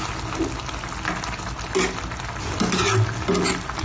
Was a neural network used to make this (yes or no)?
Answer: no